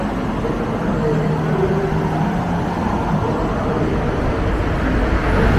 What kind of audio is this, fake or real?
real